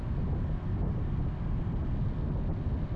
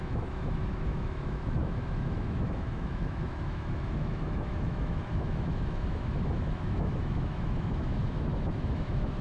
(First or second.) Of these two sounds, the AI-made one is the second